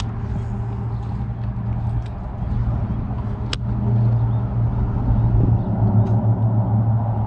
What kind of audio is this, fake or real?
real